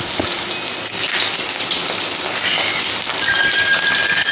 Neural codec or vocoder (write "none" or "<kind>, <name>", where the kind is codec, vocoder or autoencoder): none